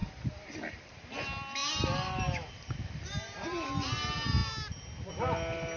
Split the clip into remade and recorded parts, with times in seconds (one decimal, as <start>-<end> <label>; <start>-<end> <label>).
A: 0.0-0.9 remade; 0.9-1.6 recorded; 1.6-3.4 remade; 3.4-5.8 recorded